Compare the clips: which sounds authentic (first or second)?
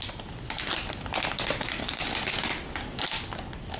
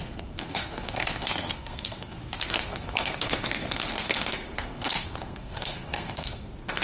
first